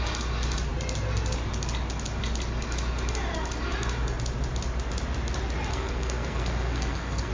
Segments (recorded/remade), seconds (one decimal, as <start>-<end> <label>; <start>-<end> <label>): 0.0-5.7 recorded; 5.7-7.3 remade